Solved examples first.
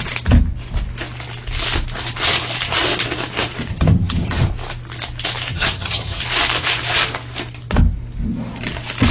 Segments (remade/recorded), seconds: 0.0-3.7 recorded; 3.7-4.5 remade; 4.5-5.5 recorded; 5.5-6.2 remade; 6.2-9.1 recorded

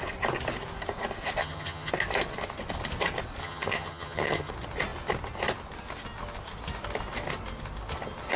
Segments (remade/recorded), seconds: 0.0-1.4 recorded; 1.4-1.9 remade; 1.9-3.4 recorded; 3.4-4.5 remade; 4.5-8.4 recorded